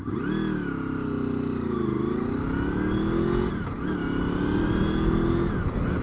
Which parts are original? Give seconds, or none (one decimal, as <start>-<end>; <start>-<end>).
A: 0.0-6.0